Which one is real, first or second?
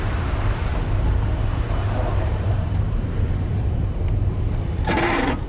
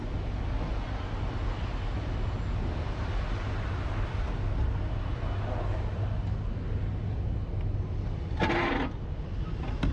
second